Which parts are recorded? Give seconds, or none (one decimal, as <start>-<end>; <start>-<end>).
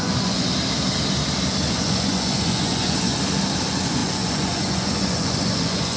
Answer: 0.5-1.7; 3.1-3.6